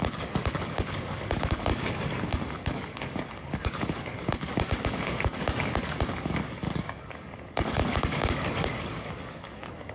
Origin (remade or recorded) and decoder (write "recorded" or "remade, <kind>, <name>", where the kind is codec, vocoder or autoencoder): remade, codec, DAC